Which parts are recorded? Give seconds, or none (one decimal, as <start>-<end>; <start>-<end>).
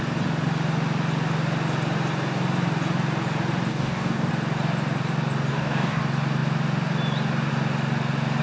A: 0.0-3.7; 4.3-5.5; 6.0-8.4